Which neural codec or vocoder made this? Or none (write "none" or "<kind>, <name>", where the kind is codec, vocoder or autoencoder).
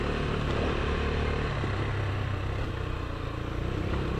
none